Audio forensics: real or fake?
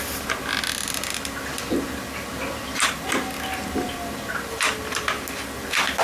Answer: real